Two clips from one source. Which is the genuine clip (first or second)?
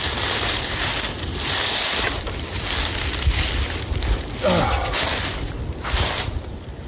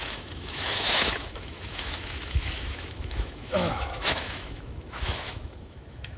first